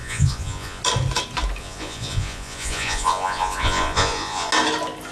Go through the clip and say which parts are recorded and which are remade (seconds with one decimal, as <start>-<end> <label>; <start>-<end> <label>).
0.0-0.8 remade; 0.8-1.6 recorded; 1.6-4.5 remade; 4.5-5.1 recorded